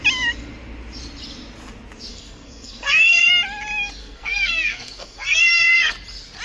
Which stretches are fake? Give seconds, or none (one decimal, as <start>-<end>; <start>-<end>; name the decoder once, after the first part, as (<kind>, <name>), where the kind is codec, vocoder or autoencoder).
2.1-3.3 (codec, SNAC); 4.0-5.9